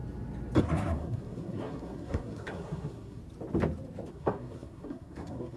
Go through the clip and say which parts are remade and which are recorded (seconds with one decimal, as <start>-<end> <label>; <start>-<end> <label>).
0.0-0.6 recorded; 0.6-3.2 remade; 3.2-4.1 recorded; 4.1-5.6 remade